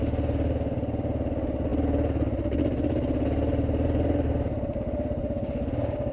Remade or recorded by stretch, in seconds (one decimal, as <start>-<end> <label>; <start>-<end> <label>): 0.0-6.1 recorded